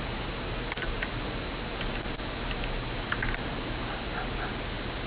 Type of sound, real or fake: real